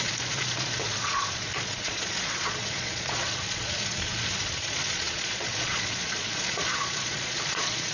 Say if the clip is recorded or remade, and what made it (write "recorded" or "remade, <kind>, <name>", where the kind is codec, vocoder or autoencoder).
remade, vocoder, Vocos